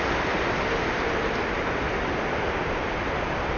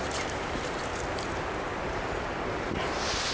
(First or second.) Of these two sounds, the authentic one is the first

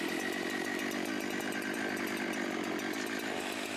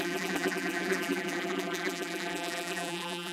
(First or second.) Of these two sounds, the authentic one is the first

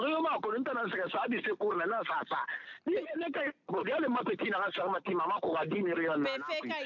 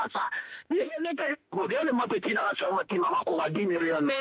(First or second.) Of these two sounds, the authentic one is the first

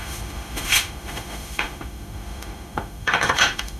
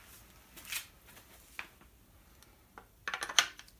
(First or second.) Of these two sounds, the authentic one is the second